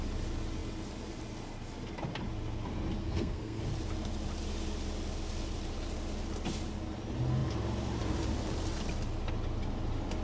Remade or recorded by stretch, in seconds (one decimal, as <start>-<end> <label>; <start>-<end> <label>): 0.0-3.0 recorded; 3.0-3.6 remade; 3.6-10.2 recorded